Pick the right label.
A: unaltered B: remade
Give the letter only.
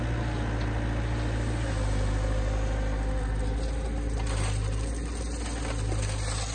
A